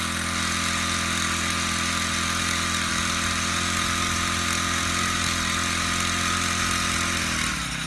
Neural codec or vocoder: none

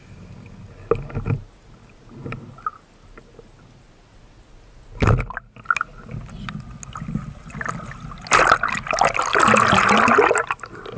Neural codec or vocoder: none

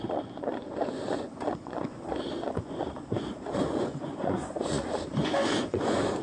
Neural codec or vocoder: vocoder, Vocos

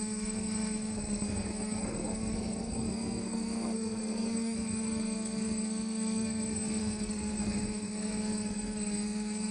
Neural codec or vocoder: codec, SNAC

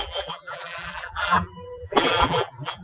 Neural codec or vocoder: vocoder, BigVGAN v2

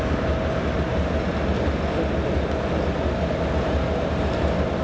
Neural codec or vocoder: none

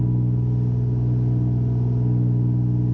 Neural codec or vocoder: none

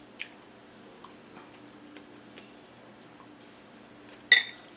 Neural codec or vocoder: none